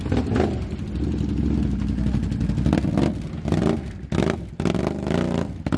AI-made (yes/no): no